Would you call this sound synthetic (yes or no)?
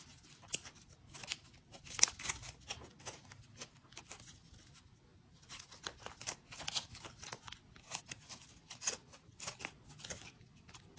no